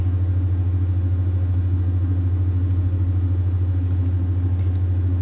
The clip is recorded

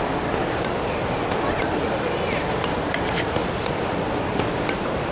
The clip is recorded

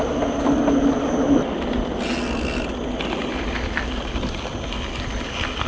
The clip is recorded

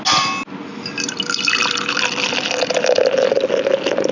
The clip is recorded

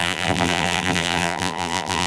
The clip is remade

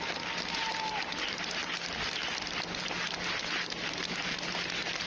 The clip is recorded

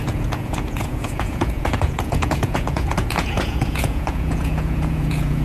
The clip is remade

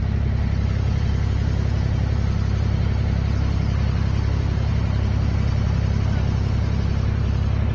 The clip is recorded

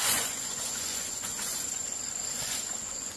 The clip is remade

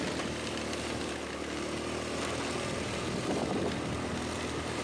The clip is recorded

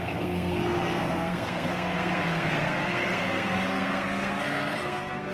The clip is remade